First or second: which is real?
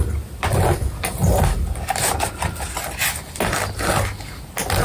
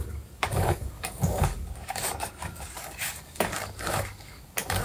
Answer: first